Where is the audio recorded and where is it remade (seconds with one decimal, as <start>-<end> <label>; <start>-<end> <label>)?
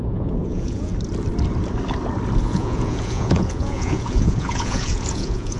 0.0-0.9 remade; 0.9-2.4 recorded; 2.4-5.6 remade